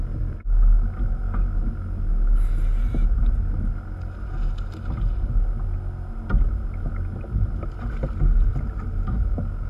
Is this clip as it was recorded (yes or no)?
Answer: yes